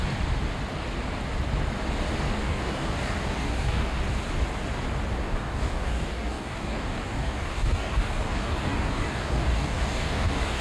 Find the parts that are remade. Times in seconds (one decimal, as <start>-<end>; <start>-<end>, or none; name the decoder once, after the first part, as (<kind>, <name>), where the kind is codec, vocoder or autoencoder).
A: 2.4-4.0 (codec, DAC); 5.2-10.6